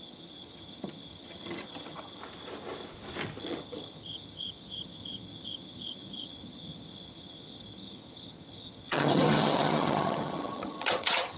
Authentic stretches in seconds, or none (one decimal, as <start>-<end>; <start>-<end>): 2.2-3.4

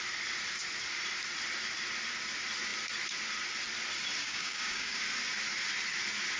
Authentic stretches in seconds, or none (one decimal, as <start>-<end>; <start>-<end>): 0.0-4.2; 5.0-6.4

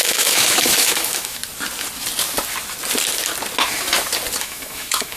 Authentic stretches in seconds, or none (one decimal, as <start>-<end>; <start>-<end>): 1.4-4.4

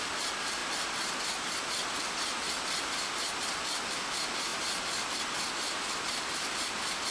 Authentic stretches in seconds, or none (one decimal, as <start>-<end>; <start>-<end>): 0.0-7.1

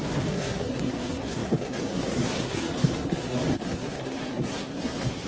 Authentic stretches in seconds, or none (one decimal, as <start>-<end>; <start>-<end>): none

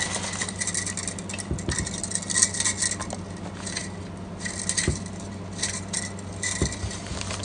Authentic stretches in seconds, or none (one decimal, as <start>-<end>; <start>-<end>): 0.0-7.4